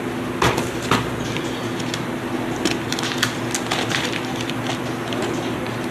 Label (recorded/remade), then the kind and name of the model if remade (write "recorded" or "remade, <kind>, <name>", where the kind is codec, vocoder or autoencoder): recorded